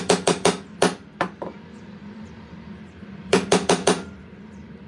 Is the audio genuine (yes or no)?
no